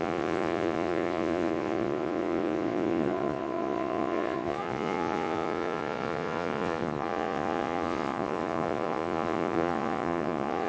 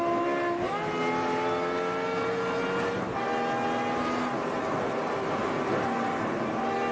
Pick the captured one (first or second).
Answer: second